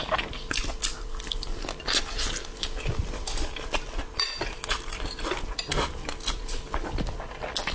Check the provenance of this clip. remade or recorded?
recorded